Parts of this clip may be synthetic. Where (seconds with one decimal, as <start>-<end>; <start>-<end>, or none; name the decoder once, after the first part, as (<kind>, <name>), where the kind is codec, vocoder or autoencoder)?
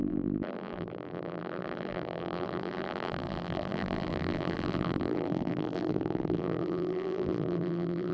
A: 0.0-8.1 (vocoder, BigVGAN v2)